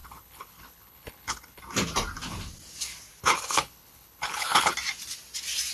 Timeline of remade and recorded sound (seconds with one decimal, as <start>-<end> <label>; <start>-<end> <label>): 0.0-1.6 remade; 1.6-3.2 recorded; 3.2-4.7 remade; 4.7-5.7 recorded